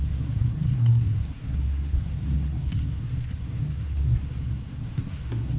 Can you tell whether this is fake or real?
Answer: fake